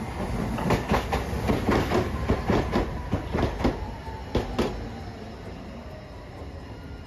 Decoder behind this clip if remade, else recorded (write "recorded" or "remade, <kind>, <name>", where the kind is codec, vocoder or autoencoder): recorded